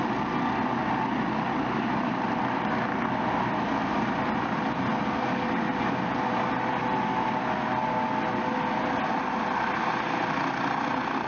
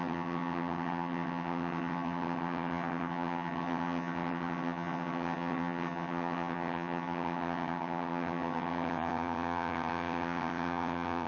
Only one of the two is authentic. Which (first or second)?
first